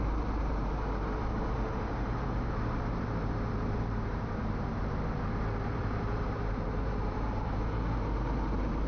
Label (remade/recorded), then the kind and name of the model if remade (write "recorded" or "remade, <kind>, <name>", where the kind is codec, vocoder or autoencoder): remade, vocoder, BigVGAN v2